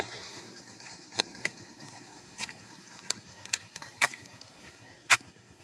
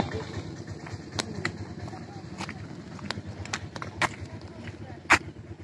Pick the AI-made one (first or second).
first